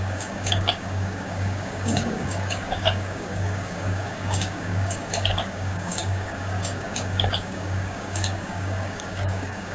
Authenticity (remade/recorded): remade